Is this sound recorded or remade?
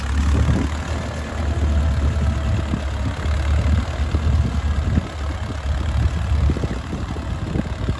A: recorded